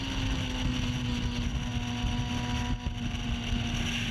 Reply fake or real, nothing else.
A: real